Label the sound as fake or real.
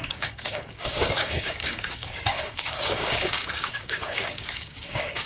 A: fake